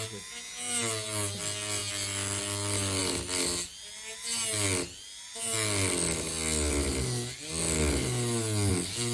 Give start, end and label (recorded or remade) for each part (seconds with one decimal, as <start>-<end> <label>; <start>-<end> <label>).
0.0-9.1 recorded